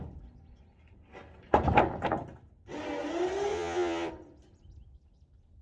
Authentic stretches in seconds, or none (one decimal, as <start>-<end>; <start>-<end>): 0.0-3.5; 4.1-5.6